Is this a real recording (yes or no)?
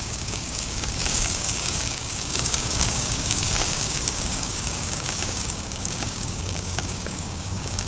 no